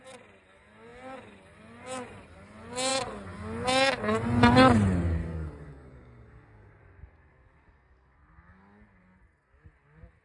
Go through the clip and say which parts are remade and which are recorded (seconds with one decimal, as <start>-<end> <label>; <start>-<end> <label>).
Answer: 0.0-5.2 recorded; 5.2-6.8 remade; 6.8-10.2 recorded